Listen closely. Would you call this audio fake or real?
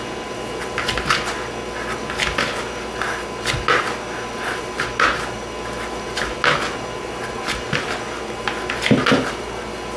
real